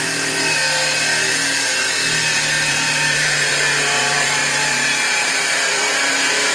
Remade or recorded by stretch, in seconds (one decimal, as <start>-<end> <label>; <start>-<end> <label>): 0.0-0.6 remade; 0.6-2.7 recorded; 2.7-6.5 remade